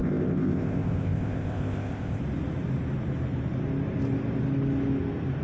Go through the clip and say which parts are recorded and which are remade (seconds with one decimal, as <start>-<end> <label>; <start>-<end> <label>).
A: 0.0-2.2 remade; 2.2-5.4 recorded